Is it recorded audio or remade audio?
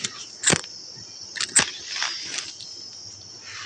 recorded